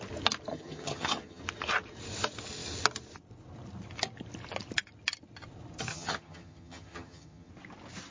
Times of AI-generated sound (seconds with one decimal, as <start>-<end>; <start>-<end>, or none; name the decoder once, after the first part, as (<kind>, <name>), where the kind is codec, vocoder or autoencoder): 0.5-1.4 (vocoder, HiFi-GAN); 5.9-7.5